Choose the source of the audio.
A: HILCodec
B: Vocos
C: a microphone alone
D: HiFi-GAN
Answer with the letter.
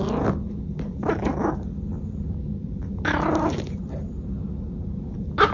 C